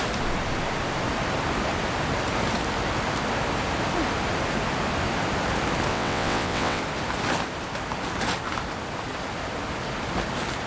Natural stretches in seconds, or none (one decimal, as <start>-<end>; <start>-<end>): 0.0-5.9; 6.8-10.7